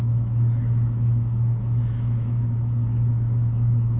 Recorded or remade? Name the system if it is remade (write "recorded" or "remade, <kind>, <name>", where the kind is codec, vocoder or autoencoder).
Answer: remade, autoencoder, DAC-VAE